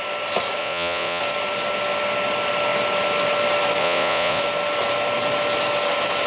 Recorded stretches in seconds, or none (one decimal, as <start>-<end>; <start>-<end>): 0.0-0.6; 1.2-3.8; 4.4-6.3